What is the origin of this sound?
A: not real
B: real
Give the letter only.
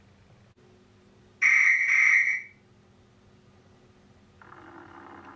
B